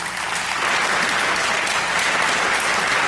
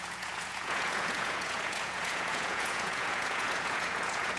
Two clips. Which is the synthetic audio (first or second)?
second